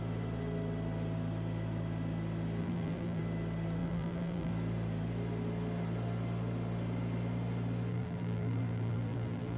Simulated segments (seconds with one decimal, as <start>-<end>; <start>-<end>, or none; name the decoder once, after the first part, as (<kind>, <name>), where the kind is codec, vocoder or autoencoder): 2.6-3.2 (vocoder, BigVGAN v2); 3.8-4.5; 7.9-9.6